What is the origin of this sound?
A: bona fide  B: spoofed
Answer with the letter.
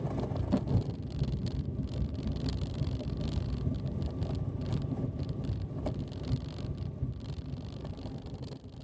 A